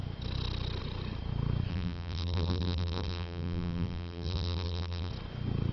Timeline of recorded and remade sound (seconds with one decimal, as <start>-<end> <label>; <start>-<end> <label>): 0.0-1.7 recorded; 1.7-5.1 remade; 5.1-5.7 recorded